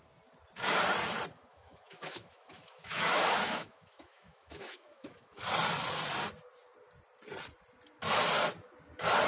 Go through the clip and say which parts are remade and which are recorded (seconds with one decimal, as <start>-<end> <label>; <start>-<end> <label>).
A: 0.0-1.5 recorded; 1.5-5.4 remade; 5.4-9.3 recorded